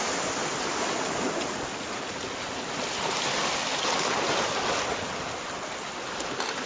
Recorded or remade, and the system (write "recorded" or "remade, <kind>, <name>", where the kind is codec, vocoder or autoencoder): recorded